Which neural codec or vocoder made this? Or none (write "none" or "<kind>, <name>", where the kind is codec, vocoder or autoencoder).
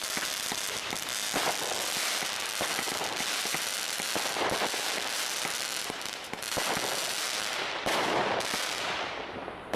none